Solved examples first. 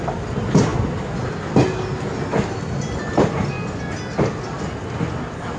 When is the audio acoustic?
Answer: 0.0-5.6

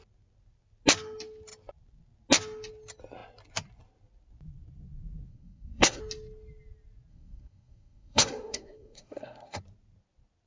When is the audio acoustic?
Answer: 0.0-5.3; 6.0-7.1; 9.6-10.5

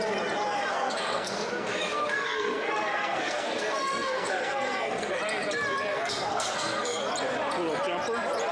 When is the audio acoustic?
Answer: 0.0-0.7; 5.2-5.9; 7.0-8.5

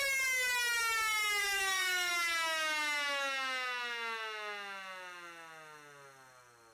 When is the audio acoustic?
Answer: 0.0-1.4; 2.1-6.7